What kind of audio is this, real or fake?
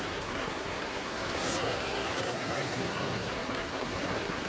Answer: fake